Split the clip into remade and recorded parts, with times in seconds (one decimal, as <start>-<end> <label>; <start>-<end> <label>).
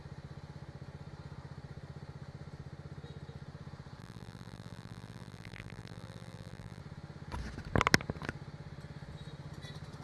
0.0-4.0 recorded; 4.0-6.8 remade; 6.8-10.0 recorded